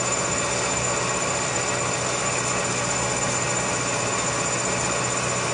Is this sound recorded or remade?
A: recorded